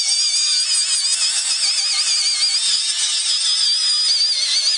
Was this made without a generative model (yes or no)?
yes